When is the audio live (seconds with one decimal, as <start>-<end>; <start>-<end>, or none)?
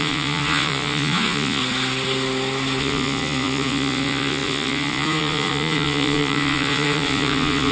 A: 1.6-2.8